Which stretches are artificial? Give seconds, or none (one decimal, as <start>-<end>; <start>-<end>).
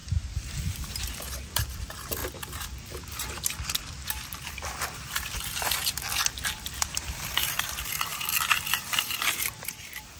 0.0-2.2; 3.8-5.8; 7.2-10.2